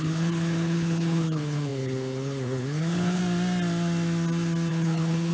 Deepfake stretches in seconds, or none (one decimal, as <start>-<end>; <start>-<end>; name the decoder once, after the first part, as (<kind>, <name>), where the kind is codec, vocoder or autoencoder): 0.0-3.2 (codec, HILCodec); 4.7-5.3